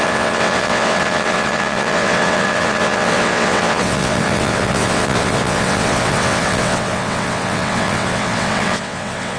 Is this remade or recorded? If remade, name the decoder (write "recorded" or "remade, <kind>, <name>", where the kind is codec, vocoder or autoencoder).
remade, vocoder, WaveNeXt